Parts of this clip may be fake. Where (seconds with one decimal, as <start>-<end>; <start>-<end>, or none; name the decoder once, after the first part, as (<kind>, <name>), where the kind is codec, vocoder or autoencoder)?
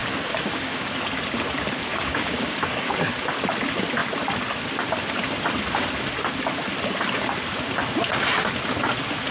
0.0-0.9 (codec, DAC); 1.9-2.9